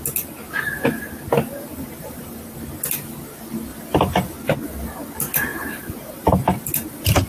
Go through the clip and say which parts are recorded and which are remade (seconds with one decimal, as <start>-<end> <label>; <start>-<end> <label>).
0.0-1.7 recorded; 1.7-2.4 remade; 2.4-5.5 recorded; 5.5-6.7 remade; 6.7-7.3 recorded